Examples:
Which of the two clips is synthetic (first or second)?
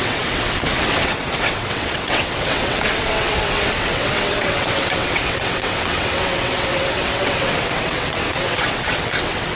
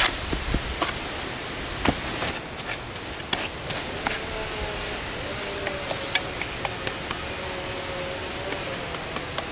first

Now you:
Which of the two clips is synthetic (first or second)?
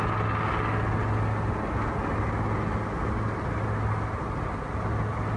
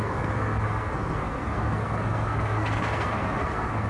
second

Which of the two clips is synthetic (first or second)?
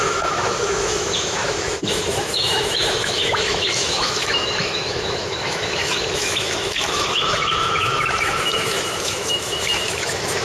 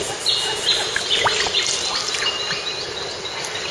first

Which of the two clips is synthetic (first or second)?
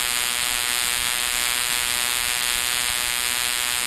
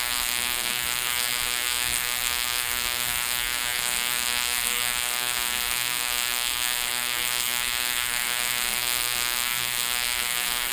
second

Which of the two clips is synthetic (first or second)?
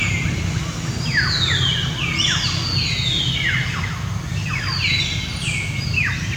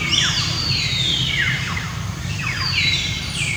second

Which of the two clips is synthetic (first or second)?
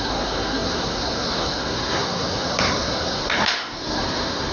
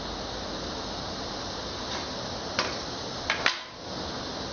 first